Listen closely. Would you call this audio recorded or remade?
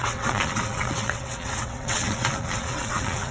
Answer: remade